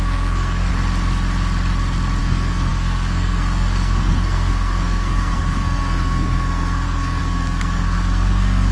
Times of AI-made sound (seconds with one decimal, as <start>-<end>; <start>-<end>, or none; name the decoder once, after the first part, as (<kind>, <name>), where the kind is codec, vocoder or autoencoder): 0.0-0.7 (codec, SNAC); 2.2-8.7